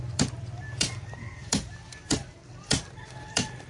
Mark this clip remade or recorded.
remade